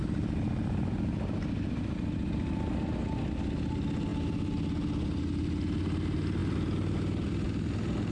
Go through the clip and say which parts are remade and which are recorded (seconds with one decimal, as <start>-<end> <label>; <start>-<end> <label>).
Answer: 0.0-8.1 recorded